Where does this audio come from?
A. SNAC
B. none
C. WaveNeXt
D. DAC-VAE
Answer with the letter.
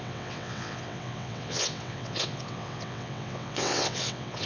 C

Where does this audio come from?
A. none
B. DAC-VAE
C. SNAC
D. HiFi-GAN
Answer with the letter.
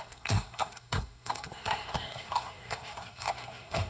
C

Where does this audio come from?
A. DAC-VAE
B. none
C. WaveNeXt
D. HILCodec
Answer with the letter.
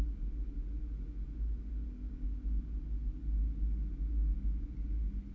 B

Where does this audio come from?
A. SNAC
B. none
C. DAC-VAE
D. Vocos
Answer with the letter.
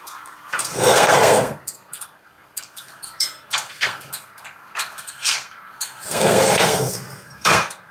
A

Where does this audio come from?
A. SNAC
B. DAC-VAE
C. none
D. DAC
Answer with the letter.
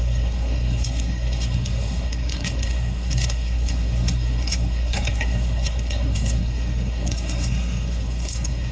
A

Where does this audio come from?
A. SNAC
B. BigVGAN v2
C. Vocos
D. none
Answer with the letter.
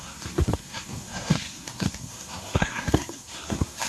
A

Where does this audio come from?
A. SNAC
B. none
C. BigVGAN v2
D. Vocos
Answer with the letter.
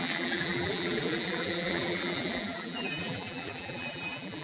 C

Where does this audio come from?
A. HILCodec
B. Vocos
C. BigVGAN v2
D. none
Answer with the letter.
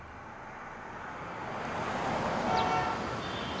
D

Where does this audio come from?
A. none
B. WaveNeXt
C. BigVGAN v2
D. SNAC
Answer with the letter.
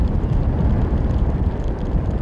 A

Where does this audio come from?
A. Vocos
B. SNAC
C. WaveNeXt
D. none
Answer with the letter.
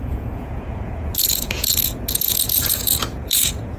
A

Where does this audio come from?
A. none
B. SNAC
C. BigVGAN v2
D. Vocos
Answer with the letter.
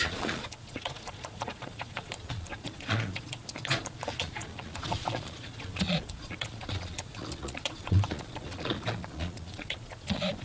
D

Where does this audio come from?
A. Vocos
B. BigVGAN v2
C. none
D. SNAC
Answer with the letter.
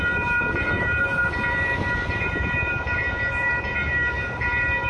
B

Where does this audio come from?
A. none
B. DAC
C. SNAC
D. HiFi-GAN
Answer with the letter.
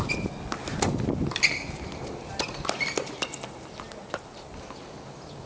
A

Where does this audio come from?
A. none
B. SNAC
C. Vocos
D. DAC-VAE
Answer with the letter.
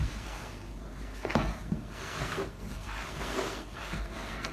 B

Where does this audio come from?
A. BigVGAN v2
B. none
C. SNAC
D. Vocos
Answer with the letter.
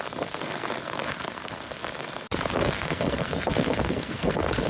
C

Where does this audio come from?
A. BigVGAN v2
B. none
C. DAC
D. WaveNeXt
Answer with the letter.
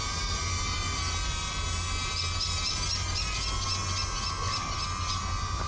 B